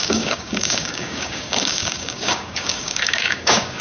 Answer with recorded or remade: remade